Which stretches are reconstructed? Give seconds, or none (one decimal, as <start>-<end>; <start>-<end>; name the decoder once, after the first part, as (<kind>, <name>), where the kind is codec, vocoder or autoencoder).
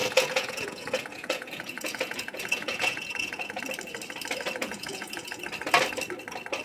0.0-3.6 (vocoder, Vocos); 4.6-5.4